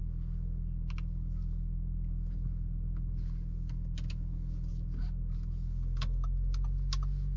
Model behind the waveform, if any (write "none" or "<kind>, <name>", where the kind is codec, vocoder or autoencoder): none